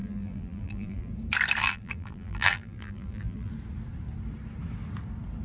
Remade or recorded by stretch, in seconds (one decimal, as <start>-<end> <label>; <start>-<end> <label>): 0.0-1.1 remade; 1.1-1.6 recorded; 1.6-3.5 remade; 3.5-5.4 recorded